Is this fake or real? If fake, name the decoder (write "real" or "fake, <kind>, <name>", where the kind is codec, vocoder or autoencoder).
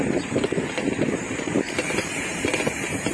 fake, vocoder, BigVGAN v2